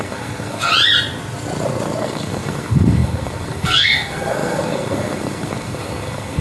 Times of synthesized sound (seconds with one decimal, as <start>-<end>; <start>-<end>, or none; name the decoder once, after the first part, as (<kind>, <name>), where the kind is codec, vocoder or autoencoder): 0.0-0.7 (codec, SNAC); 2.0-6.4